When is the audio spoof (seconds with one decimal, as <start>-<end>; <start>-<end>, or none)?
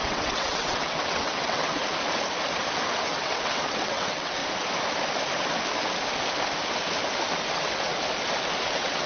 0.0-1.8; 3.1-4.4; 7.5-7.9; 8.7-9.1